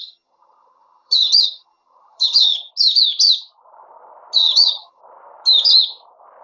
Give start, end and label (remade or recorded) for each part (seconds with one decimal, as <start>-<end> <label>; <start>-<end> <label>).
0.0-2.7 remade; 2.7-4.4 recorded; 4.4-5.0 remade; 5.0-6.4 recorded